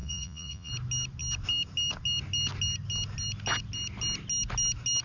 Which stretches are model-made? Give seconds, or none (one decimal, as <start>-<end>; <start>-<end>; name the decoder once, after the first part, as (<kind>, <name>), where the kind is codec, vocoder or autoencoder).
0.0-0.7 (vocoder, Vocos)